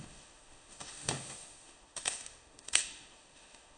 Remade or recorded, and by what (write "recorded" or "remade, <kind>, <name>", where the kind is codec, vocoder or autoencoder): remade, autoencoder, DAC-VAE